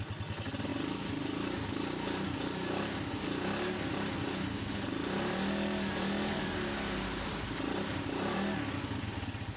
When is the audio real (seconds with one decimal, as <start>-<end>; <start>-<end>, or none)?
0.0-9.6